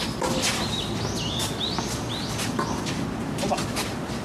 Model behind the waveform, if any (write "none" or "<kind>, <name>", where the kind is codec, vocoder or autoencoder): none